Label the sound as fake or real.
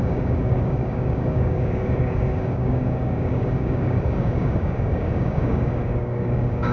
fake